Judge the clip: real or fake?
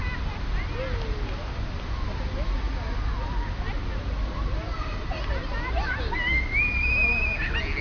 real